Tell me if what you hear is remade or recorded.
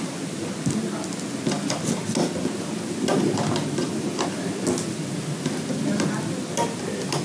recorded